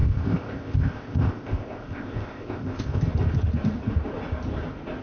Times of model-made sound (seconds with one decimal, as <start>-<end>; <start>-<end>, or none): 0.0-3.0